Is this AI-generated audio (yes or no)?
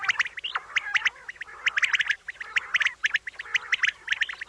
no